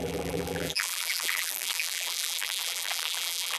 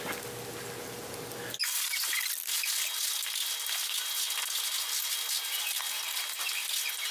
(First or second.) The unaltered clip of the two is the second